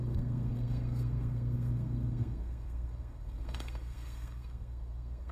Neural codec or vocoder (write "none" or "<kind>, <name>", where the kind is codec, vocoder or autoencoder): codec, SNAC